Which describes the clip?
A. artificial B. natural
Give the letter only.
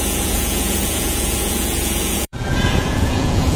A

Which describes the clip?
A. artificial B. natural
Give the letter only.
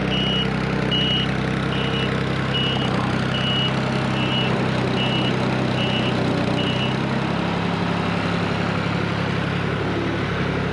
B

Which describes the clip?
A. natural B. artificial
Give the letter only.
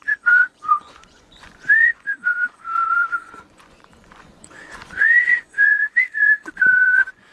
B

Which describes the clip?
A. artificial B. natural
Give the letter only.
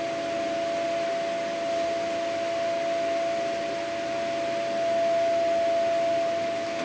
B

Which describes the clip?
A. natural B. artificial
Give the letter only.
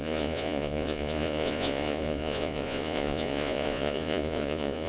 B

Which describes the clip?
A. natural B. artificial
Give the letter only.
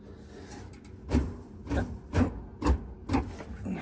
A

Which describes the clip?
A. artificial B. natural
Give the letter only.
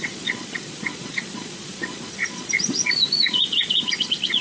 A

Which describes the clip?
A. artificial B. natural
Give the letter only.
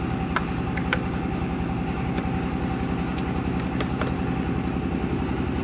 B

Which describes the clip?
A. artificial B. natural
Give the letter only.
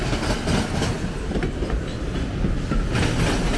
B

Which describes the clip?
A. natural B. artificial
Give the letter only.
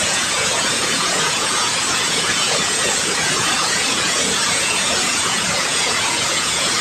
B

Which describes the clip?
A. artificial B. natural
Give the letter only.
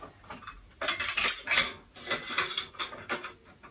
B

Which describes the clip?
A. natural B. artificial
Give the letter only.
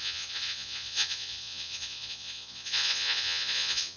B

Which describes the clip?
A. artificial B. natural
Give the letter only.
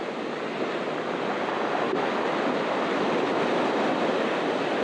B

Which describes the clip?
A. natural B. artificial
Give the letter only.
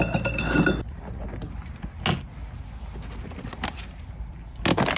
A